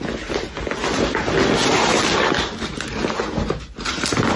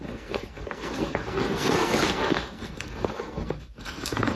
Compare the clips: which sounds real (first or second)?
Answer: first